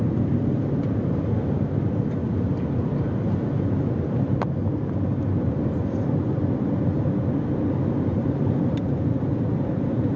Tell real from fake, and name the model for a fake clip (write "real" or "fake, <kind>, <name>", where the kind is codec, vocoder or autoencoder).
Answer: real